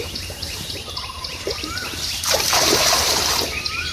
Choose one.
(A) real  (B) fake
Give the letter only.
B